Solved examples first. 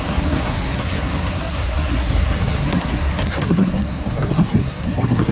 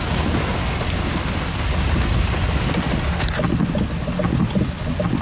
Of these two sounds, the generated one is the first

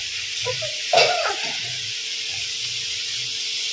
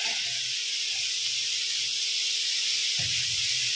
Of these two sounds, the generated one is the first